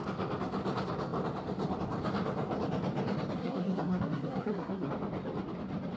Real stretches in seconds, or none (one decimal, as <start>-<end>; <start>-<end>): 0.0-3.4; 4.9-6.0